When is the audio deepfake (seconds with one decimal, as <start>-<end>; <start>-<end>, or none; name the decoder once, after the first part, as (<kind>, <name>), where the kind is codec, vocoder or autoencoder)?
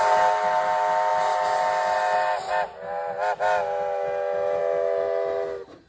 none